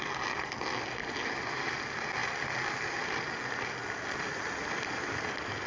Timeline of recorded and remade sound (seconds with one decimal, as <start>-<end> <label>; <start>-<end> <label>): 0.0-5.7 recorded